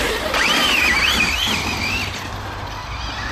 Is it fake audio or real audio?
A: real